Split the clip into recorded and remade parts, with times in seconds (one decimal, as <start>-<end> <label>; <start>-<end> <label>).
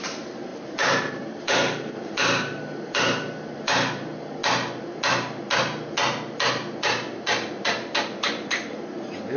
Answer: 0.0-4.4 remade; 4.4-6.8 recorded; 6.8-9.4 remade